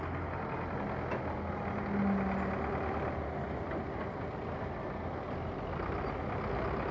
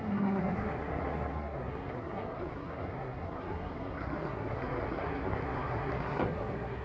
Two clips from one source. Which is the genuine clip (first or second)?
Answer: first